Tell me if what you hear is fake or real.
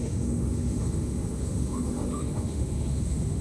fake